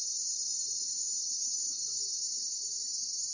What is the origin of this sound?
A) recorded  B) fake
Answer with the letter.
A